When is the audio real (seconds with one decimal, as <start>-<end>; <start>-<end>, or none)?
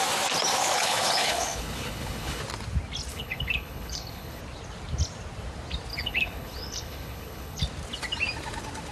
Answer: 0.0-0.7; 2.4-3.1; 4.4-5.9; 7.6-8.9